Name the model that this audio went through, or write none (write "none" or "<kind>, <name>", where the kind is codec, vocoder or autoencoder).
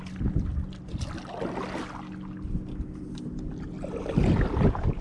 none